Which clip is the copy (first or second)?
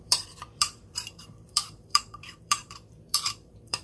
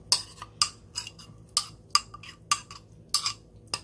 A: first